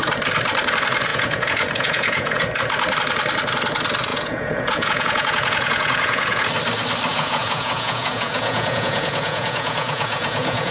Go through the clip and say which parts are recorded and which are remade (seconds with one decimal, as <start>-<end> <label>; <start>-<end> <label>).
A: 0.0-1.1 recorded; 1.1-2.4 remade; 2.4-4.1 recorded; 4.1-6.5 remade; 6.5-7.1 recorded; 7.1-10.7 remade